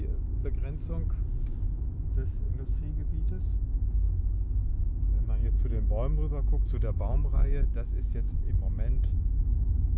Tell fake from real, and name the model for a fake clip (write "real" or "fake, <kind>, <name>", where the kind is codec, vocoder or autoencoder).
real